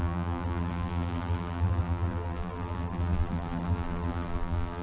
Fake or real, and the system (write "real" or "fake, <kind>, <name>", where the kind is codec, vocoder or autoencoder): fake, vocoder, BigVGAN v2